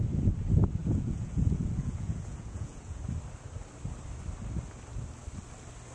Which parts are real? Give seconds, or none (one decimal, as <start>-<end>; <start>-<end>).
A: 0.0-0.8; 3.0-5.9